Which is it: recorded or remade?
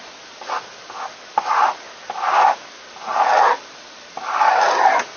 recorded